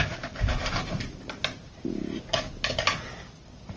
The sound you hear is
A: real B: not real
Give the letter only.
A